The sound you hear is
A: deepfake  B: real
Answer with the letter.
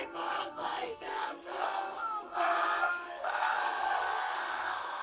A